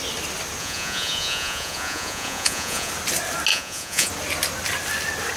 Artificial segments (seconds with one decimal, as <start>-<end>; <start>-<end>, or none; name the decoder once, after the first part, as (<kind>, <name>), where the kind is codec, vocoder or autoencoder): 0.6-2.9 (vocoder, Vocos); 3.5-4.1